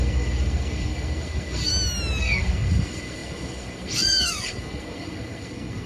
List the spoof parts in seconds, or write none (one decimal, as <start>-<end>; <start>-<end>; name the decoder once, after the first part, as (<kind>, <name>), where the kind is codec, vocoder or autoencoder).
0.0-1.7 (codec, SNAC); 2.2-5.9

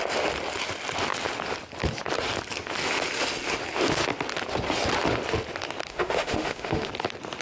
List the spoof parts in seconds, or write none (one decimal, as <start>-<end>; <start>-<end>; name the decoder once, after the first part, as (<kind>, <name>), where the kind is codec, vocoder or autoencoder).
5.9-6.9 (autoencoder, DAC-VAE)

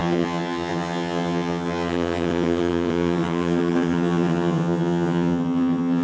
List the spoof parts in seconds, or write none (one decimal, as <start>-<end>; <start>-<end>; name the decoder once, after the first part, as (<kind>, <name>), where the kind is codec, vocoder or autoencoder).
0.0-6.0 (vocoder, HiFi-GAN)

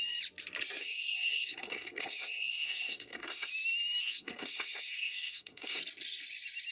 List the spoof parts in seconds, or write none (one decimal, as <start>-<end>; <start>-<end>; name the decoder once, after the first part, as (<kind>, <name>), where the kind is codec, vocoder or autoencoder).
0.8-3.5 (codec, SNAC); 4.0-5.8

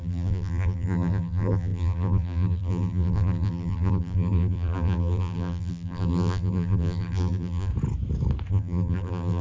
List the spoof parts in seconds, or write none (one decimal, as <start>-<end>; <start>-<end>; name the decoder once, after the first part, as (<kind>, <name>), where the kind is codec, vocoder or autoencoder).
0.0-7.7 (vocoder, BigVGAN v2); 8.5-9.4

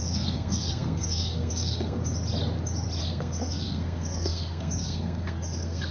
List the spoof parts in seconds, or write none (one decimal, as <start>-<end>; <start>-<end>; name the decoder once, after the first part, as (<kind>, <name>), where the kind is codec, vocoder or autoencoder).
0.0-2.0 (codec, SNAC); 3.0-5.9

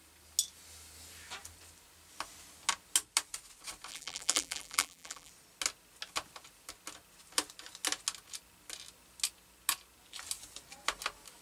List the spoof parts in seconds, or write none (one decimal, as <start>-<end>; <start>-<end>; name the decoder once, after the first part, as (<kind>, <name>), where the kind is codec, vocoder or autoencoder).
3.9-5.3 (vocoder, BigVGAN v2)